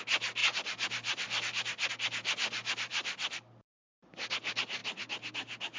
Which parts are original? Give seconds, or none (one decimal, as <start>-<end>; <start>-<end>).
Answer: 0.0-5.8